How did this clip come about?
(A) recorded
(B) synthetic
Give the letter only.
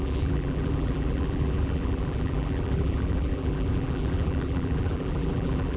B